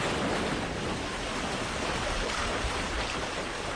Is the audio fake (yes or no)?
no